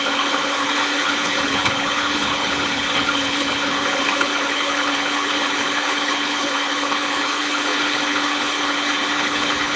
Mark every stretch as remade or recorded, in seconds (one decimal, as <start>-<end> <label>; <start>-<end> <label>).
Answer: 0.0-9.8 remade